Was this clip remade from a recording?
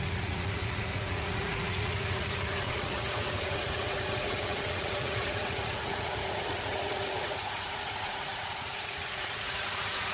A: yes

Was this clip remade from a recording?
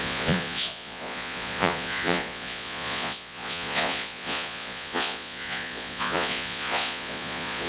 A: yes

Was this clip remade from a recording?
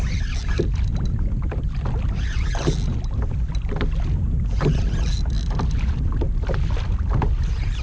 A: no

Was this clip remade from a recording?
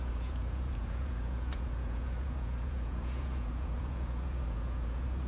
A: yes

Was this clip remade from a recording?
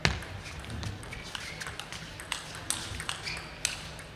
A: no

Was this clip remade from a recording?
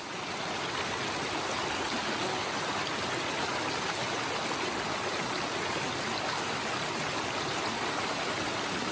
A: no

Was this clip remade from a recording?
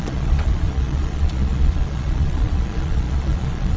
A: yes